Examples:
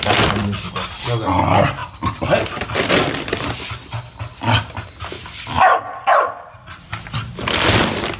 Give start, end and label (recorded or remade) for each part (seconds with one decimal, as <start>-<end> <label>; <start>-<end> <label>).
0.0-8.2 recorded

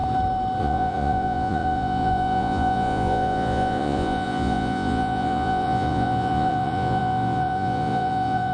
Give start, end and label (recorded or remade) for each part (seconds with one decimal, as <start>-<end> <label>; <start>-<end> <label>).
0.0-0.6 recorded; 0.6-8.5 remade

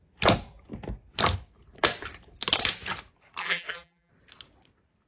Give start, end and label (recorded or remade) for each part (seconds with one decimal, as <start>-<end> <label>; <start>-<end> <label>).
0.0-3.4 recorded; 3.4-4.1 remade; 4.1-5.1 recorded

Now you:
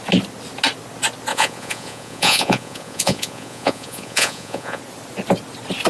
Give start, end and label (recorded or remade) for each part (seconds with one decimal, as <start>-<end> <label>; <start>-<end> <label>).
0.0-1.3 recorded; 1.3-4.8 remade; 4.8-5.9 recorded